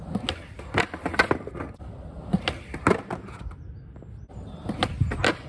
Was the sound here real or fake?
real